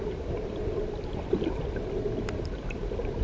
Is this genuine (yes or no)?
yes